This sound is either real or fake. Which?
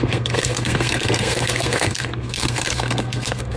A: fake